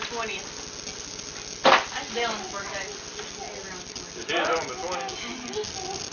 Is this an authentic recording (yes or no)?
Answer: yes